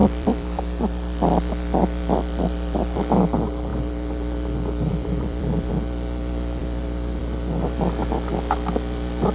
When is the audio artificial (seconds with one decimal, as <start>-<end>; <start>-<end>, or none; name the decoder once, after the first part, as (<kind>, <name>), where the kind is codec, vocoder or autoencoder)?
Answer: 0.0-1.4 (vocoder, BigVGAN v2); 3.7-5.7; 6.6-7.2